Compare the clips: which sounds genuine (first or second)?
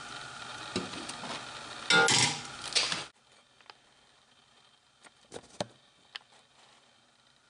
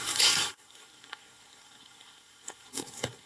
first